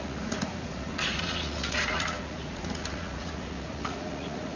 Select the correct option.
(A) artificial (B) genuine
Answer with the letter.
A